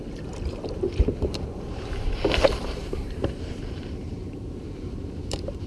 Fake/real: fake